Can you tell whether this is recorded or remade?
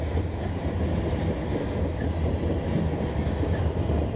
recorded